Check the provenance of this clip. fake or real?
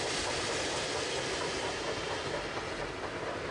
real